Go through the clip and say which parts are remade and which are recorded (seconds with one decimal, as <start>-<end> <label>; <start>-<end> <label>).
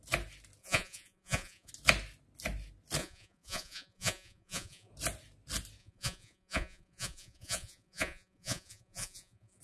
0.0-0.6 recorded; 0.6-1.7 remade; 1.7-3.0 recorded; 3.0-4.9 remade; 4.9-5.8 recorded; 5.8-9.6 remade